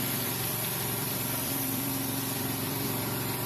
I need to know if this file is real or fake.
fake